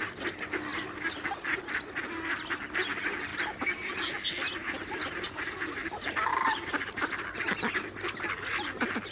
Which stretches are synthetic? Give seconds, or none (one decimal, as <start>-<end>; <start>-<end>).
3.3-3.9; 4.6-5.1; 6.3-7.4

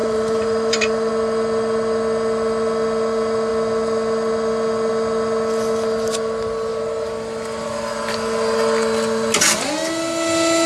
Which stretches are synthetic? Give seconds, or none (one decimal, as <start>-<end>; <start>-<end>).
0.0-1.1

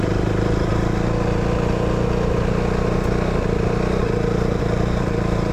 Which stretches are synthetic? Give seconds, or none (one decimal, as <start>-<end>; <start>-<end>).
0.0-0.7; 4.0-5.5

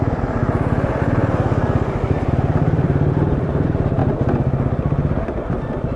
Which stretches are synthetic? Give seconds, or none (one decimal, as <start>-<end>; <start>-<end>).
0.0-1.2; 2.3-4.0; 5.2-6.0